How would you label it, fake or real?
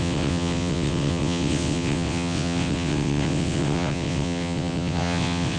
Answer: fake